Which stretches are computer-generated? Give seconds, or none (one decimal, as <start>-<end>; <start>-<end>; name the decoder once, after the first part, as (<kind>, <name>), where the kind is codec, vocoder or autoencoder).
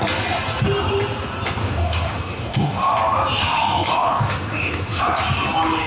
1.6-3.0 (autoencoder, DAC-VAE); 3.4-5.0